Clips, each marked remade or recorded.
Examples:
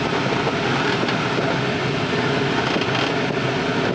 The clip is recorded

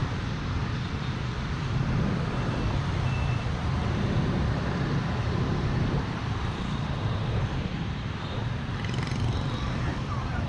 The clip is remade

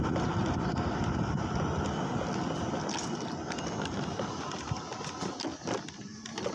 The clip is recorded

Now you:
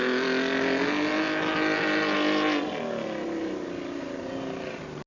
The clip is recorded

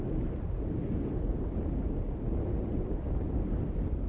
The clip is recorded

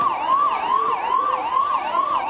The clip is recorded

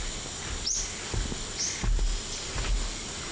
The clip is recorded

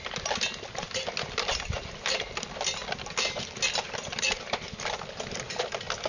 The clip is recorded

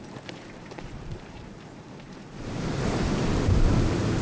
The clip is remade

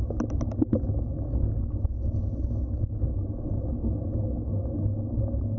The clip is recorded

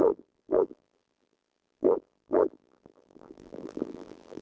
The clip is remade